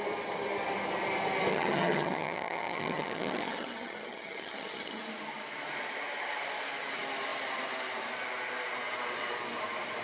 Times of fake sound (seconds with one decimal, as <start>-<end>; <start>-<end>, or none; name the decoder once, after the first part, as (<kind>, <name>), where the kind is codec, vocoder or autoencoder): 1.5-5.0 (vocoder, HiFi-GAN)